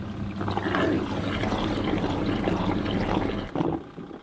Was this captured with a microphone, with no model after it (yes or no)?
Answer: yes